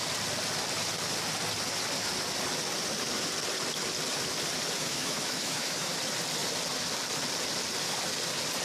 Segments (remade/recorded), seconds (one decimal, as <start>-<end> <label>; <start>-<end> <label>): 0.0-4.8 recorded; 4.8-5.9 remade; 5.9-8.6 recorded